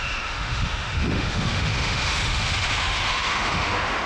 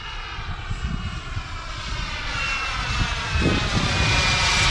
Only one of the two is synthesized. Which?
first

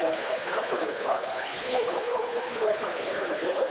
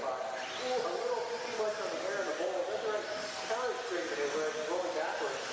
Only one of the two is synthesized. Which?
first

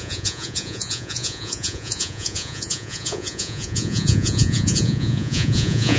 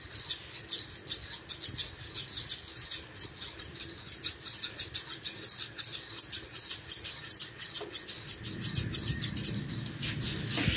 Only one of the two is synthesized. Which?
first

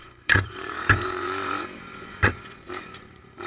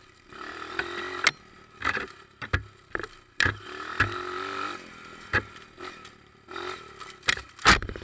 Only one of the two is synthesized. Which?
first